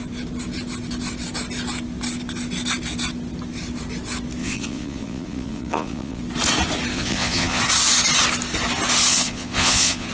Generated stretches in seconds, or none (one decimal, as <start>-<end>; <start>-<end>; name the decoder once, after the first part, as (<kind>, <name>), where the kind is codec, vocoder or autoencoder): 4.4-6.2 (vocoder, Vocos); 6.9-7.6; 9.1-10.1